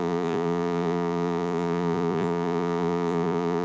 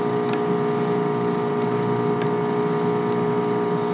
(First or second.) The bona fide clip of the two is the second